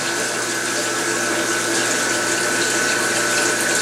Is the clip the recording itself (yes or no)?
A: yes